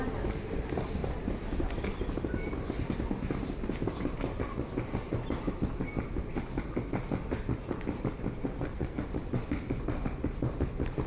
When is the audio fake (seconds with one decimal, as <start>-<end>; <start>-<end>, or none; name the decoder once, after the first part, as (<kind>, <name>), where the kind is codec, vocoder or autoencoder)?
8.4-9.0 (codec, SNAC)